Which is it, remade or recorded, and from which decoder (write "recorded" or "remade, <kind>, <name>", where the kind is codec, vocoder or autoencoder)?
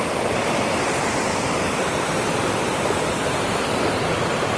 recorded